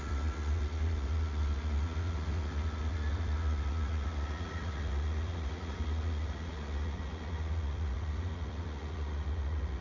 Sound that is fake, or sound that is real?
fake